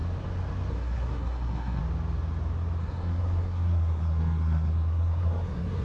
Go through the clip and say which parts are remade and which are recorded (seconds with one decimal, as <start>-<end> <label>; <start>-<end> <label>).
0.0-0.7 recorded; 0.7-1.8 remade; 1.8-2.8 recorded; 2.8-5.8 remade